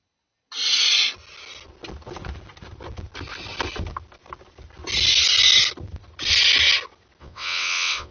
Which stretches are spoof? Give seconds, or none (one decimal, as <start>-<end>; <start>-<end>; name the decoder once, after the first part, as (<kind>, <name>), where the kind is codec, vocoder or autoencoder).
7.2-8.1 (vocoder, WaveNeXt)